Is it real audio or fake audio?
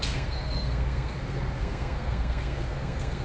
fake